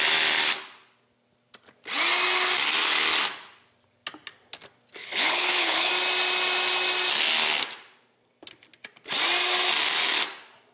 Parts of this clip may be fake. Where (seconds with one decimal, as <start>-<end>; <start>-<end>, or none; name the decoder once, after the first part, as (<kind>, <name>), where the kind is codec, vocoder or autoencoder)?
5.0-5.9 (codec, HILCodec)